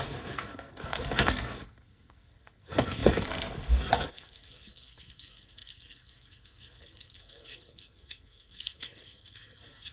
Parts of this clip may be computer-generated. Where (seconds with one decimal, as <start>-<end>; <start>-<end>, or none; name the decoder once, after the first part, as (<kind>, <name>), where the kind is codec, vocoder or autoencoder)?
0.0-9.9 (codec, SNAC)

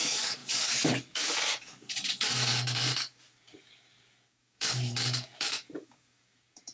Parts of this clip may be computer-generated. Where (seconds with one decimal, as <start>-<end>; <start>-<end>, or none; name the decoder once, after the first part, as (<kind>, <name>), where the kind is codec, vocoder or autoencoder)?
0.0-6.7 (codec, DAC)

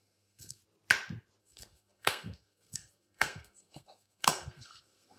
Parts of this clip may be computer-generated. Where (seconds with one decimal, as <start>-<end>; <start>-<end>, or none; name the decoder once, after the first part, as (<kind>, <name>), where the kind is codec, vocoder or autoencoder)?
0.0-0.6 (codec, SNAC); 1.4-5.2

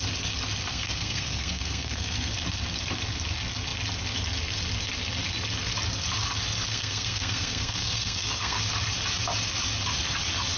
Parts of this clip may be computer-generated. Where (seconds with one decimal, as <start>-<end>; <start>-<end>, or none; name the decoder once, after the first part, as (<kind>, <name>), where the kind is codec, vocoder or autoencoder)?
0.7-2.3 (codec, SNAC); 6.7-8.6

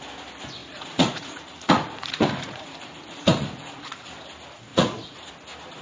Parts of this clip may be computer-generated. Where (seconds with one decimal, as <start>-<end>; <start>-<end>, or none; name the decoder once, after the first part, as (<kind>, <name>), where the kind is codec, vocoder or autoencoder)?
0.6-4.1 (vocoder, Vocos); 4.7-5.3

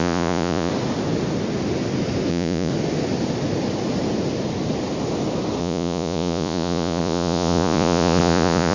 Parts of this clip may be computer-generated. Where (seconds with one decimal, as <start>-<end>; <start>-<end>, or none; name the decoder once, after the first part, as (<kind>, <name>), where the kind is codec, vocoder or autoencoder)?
0.0-0.7 (vocoder, Vocos); 2.3-2.7; 5.6-8.7

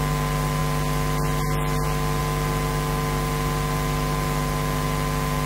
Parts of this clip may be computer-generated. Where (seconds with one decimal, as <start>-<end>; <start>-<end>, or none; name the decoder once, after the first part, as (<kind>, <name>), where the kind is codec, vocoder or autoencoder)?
none